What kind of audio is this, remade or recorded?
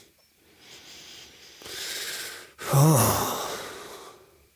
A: recorded